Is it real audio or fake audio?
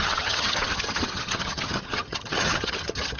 fake